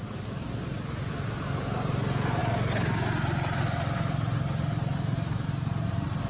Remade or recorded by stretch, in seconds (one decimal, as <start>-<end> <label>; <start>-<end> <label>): 0.0-6.3 recorded